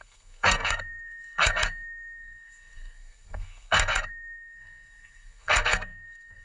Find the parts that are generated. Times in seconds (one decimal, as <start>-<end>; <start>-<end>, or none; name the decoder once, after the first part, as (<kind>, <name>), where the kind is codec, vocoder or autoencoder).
0.0-6.4 (codec, SNAC)